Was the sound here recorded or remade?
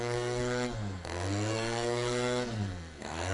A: remade